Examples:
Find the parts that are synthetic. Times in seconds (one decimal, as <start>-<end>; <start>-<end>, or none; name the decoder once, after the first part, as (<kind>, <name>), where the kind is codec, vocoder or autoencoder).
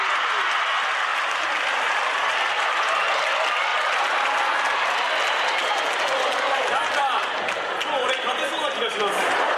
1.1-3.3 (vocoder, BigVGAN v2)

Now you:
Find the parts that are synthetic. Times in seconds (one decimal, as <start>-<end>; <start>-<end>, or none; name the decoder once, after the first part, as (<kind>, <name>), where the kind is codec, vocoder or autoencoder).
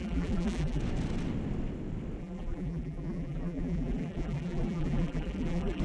0.0-0.8 (vocoder, BigVGAN v2); 2.2-5.8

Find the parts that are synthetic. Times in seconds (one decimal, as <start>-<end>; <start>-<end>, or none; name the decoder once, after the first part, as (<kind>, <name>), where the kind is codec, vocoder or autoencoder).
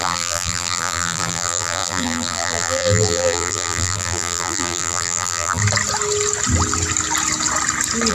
0.0-5.6 (vocoder, BigVGAN v2)